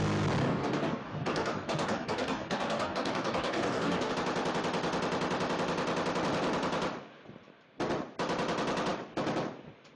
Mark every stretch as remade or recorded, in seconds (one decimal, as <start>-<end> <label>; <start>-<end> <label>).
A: 0.0-0.4 recorded; 0.4-4.1 remade; 4.1-10.0 recorded

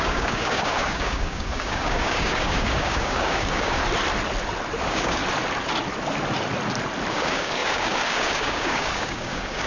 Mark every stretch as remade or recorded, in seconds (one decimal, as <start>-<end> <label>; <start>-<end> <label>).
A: 0.0-3.8 remade; 3.8-4.8 recorded; 4.8-5.2 remade; 5.2-7.1 recorded; 7.1-9.7 remade

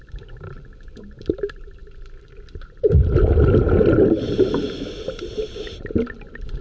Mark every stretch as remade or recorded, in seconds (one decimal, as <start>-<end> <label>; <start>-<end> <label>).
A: 0.0-6.6 recorded

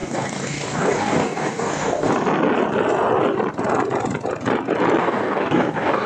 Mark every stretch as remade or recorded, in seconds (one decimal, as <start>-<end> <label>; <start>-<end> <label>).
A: 0.0-2.1 remade; 2.1-5.0 recorded; 5.0-6.1 remade

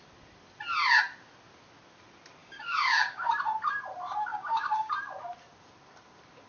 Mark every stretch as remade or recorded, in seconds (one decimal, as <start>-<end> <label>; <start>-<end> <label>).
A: 0.0-2.4 recorded; 2.4-3.3 remade; 3.3-4.3 recorded; 4.3-4.9 remade; 4.9-6.5 recorded

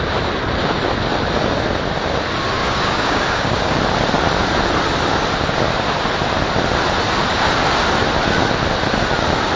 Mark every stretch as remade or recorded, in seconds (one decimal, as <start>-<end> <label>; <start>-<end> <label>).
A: 0.0-2.6 recorded; 2.6-3.8 remade; 3.8-9.6 recorded

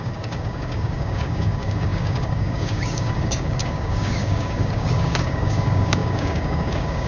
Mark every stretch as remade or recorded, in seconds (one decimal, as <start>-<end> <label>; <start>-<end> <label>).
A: 0.0-7.1 remade